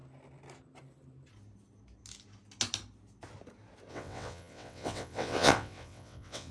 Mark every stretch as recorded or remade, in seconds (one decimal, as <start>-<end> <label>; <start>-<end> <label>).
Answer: 0.0-3.9 recorded; 3.9-6.5 remade